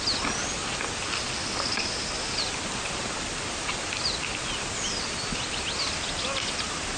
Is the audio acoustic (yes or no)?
yes